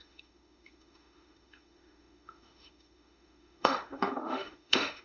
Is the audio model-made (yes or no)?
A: yes